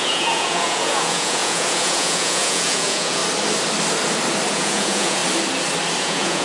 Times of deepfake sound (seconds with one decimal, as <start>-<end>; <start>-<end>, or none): 0.0-3.2; 4.5-5.2; 6.0-6.4